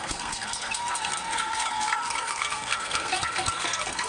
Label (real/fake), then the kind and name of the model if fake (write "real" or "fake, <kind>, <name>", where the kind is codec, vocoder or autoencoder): fake, codec, SNAC